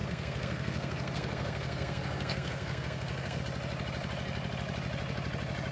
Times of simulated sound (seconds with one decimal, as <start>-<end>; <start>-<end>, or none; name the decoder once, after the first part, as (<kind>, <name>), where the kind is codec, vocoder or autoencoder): 0.0-3.4 (codec, SNAC)